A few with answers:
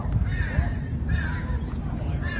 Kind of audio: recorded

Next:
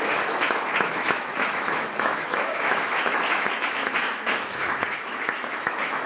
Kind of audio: remade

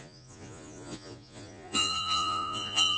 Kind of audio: remade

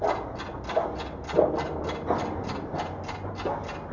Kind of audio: recorded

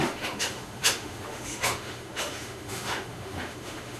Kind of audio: remade